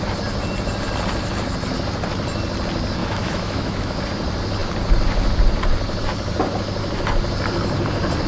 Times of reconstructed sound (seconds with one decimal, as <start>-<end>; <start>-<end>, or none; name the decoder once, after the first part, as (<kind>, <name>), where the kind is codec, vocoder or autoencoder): 3.0-4.0 (autoencoder, DAC-VAE)